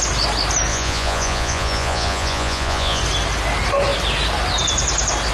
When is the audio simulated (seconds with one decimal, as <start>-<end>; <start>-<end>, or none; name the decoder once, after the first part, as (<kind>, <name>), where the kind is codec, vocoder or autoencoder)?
0.7-3.0 (vocoder, Vocos)